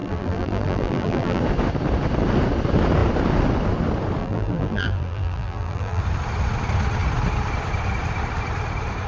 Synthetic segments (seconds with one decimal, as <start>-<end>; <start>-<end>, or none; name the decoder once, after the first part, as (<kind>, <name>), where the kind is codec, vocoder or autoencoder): 0.0-1.4 (vocoder, BigVGAN v2); 4.2-6.0